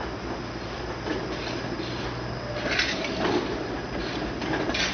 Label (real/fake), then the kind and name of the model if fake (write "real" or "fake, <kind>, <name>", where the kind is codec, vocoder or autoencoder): real